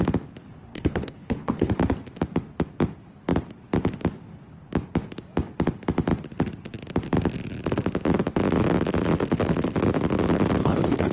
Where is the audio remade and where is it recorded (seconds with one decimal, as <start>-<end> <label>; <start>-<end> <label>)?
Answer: 0.0-0.7 recorded; 0.7-1.7 remade; 1.7-10.6 recorded; 10.6-11.1 remade